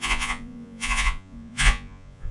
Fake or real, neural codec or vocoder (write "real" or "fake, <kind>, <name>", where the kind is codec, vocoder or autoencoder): fake, vocoder, Vocos